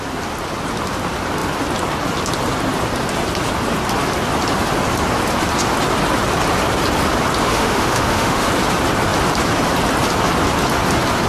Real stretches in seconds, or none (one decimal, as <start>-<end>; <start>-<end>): 0.0-7.4; 8.5-11.3

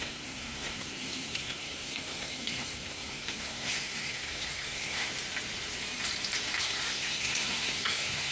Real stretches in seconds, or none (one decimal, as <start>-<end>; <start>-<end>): 5.1-6.6

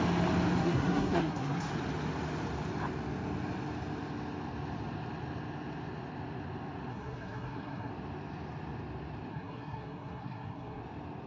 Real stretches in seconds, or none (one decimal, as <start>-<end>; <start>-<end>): 0.0-0.6; 1.7-6.9; 7.9-9.3; 10.8-11.3

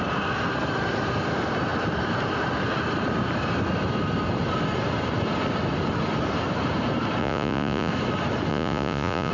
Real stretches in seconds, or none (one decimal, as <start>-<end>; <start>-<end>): 0.0-7.2; 7.9-8.5

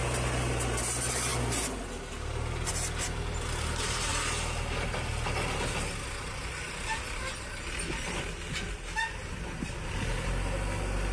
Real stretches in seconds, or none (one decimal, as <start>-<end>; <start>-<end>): 0.0-11.1

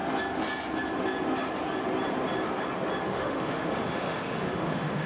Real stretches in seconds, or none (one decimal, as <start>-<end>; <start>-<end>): 0.0-3.1